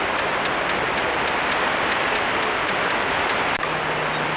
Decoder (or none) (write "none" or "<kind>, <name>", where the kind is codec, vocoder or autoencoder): none